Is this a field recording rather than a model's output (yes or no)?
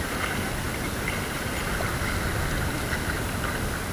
yes